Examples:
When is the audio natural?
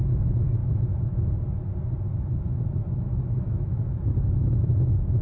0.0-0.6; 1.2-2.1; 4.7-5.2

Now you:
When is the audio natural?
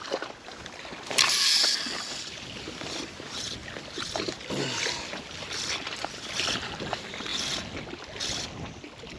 0.0-9.2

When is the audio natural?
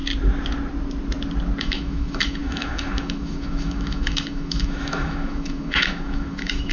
0.0-1.6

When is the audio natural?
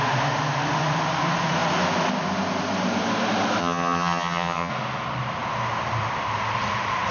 0.0-3.6; 4.7-7.1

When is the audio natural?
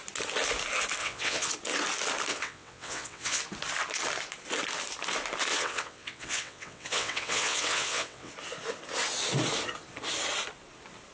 0.0-1.0; 1.5-2.3; 3.4-5.5; 8.3-11.1